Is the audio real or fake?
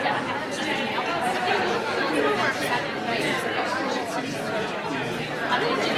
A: fake